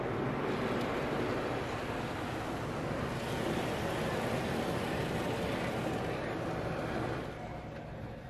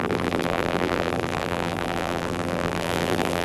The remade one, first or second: second